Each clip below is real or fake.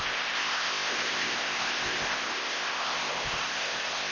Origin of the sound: fake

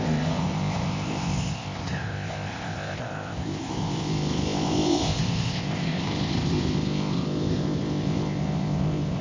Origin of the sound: fake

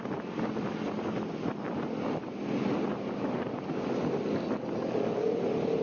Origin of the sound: real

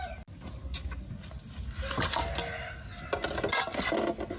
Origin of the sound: real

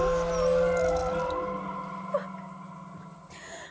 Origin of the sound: real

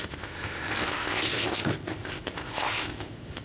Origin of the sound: fake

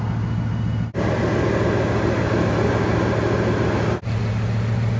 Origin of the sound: real